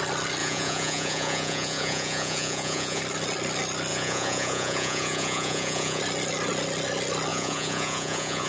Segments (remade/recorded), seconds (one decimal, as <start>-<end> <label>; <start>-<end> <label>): 0.0-0.4 recorded; 0.4-3.0 remade; 3.0-3.9 recorded; 3.9-6.0 remade; 6.0-7.3 recorded; 7.3-8.5 remade